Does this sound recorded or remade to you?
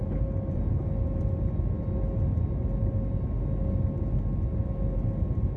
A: recorded